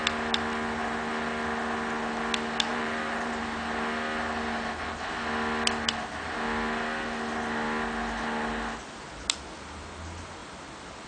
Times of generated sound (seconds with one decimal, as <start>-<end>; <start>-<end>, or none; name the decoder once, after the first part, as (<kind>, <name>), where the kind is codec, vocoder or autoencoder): 2.7-3.3 (vocoder, BigVGAN v2)